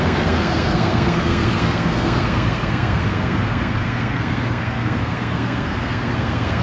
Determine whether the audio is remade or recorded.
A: remade